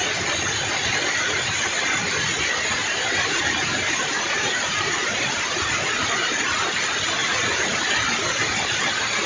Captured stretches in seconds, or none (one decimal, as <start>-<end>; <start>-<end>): 0.0-2.8; 5.4-7.2; 7.9-9.3